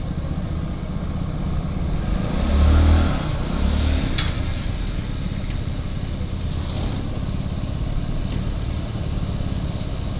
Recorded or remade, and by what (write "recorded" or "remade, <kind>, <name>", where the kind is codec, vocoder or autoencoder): recorded